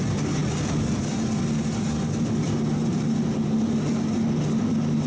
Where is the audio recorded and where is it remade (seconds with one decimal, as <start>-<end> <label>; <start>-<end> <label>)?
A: 0.0-5.1 recorded